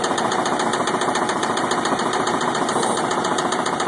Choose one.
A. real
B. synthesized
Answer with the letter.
B